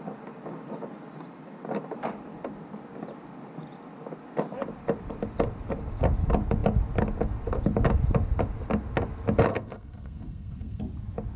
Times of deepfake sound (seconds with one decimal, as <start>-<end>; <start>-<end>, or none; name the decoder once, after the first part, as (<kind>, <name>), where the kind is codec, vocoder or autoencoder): 9.5-10.8 (codec, SNAC)